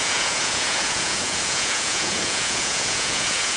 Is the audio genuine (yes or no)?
no